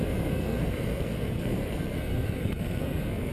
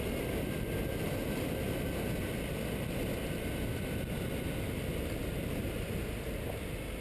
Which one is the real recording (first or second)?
second